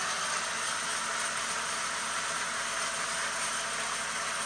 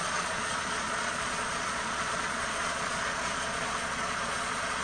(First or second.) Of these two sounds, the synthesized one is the second